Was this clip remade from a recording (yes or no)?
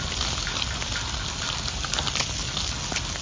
no